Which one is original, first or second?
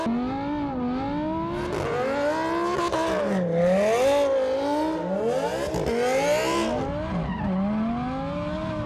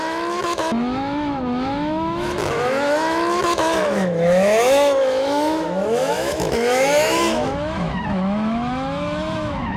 first